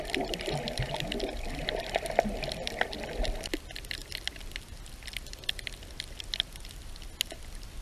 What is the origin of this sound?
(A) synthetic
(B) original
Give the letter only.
B